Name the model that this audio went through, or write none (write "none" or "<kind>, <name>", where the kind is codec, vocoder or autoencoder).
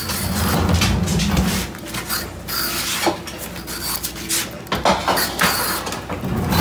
none